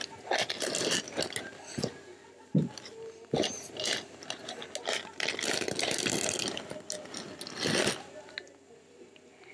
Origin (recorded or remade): recorded